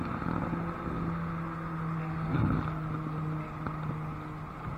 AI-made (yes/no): no